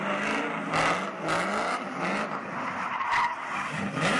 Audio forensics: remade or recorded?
recorded